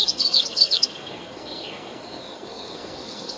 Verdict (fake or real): fake